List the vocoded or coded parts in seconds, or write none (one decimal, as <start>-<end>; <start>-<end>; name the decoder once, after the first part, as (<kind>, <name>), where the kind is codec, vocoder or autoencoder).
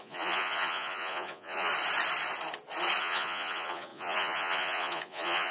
0.0-1.7 (vocoder, Vocos); 3.0-5.5